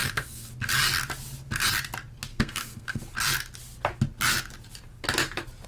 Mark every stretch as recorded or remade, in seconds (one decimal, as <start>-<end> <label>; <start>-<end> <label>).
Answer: 0.0-0.5 remade; 0.5-2.3 recorded; 2.3-3.0 remade; 3.0-5.7 recorded